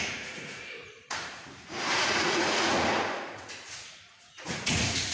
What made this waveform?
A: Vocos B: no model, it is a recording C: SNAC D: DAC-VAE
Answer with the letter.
A